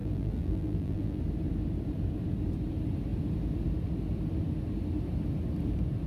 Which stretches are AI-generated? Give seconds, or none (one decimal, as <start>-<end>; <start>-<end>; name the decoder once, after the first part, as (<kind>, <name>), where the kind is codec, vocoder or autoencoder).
0.0-1.2 (vocoder, BigVGAN v2)